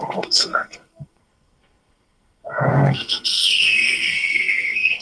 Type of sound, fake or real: fake